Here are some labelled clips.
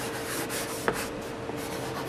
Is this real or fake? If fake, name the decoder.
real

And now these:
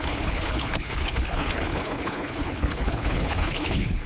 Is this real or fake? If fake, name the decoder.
fake, codec, HILCodec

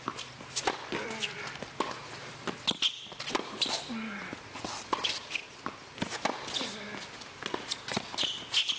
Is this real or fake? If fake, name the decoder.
real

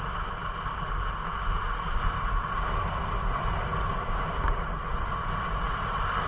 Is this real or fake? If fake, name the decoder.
real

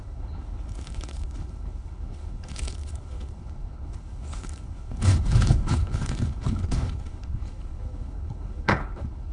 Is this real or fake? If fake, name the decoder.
fake, codec, HILCodec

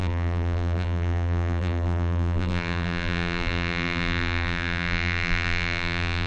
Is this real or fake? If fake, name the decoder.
fake, vocoder, BigVGAN v2